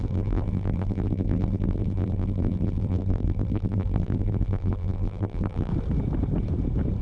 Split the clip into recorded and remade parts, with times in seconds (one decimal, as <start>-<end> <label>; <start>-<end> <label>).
0.0-5.7 remade; 5.7-7.0 recorded